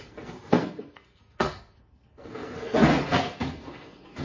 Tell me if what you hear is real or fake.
fake